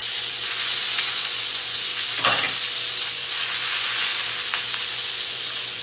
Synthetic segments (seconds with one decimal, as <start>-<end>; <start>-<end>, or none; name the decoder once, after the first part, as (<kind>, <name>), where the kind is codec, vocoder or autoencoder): 0.0-1.9 (vocoder, Vocos); 3.0-4.1; 4.7-5.8